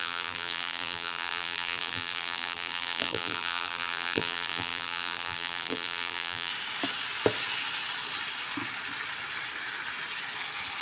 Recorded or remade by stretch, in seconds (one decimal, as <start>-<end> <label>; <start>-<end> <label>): 0.0-6.5 remade; 6.5-10.8 recorded